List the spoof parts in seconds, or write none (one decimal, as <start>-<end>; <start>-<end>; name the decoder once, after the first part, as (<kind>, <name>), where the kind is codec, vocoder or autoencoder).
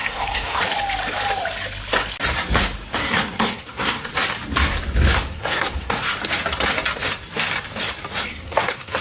0.0-0.6 (codec, SNAC); 3.0-4.1; 5.1-6.1; 8.3-9.0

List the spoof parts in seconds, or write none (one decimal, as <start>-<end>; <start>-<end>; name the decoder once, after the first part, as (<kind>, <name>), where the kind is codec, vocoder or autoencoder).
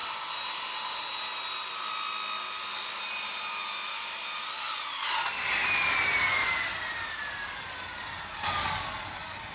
none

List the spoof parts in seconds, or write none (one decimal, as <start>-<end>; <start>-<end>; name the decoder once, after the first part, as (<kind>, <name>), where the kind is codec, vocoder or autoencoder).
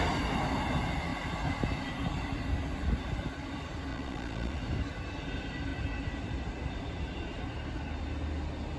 3.9-4.6 (vocoder, Vocos)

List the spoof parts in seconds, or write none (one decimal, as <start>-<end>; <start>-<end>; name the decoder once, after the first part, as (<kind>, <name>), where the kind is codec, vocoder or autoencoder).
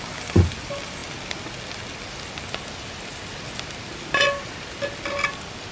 none